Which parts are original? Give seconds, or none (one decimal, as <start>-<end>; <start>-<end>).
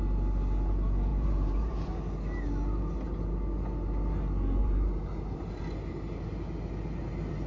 0.0-1.1; 1.9-4.6; 5.6-7.5